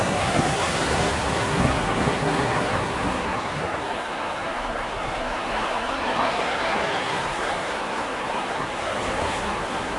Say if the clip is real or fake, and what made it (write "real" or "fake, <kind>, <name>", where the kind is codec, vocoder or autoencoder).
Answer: fake, codec, SNAC